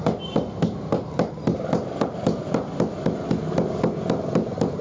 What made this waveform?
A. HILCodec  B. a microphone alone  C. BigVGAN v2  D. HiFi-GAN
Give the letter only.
B